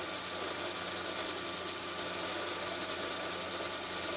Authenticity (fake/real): real